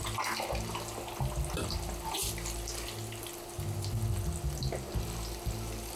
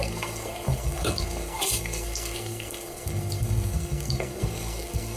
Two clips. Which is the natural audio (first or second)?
first